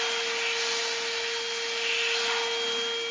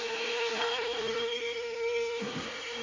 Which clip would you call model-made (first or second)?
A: second